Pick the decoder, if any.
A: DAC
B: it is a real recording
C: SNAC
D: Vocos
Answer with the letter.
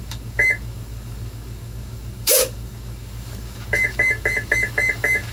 A